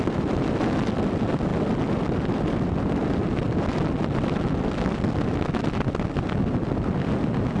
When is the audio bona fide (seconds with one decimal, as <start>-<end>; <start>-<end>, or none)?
0.0-7.6